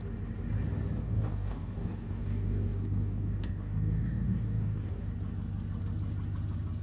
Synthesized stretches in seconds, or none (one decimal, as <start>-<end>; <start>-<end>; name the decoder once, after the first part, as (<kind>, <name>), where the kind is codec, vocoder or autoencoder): 1.0-5.1 (codec, DAC)